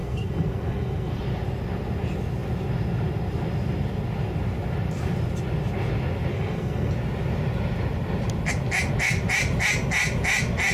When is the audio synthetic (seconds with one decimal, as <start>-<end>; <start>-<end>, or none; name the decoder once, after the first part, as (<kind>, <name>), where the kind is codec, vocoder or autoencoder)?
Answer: 0.0-1.2 (codec, SNAC); 6.3-6.9